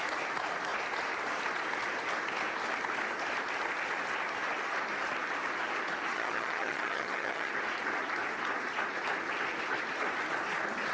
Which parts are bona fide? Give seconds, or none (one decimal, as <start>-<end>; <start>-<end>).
0.0-6.1; 7.5-10.9